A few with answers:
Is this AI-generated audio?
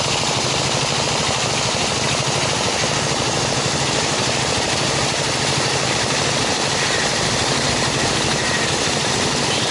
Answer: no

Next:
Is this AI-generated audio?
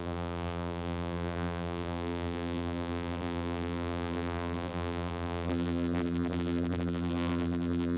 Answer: yes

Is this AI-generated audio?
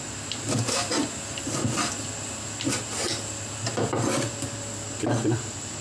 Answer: no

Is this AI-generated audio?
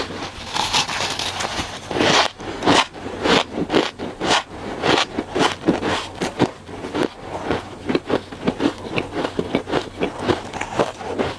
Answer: no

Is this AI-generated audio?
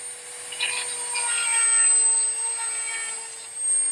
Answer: no